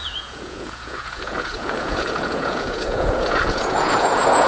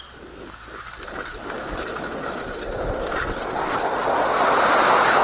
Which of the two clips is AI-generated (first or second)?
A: first